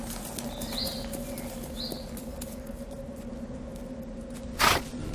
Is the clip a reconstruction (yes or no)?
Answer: no